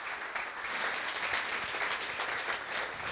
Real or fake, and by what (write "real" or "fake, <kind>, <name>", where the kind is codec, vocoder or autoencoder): real